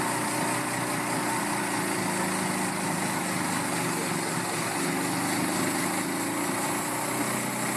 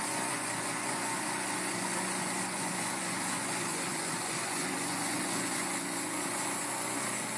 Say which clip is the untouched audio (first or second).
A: first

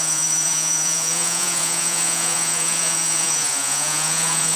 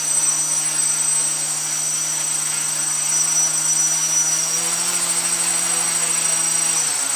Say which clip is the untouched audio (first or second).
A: second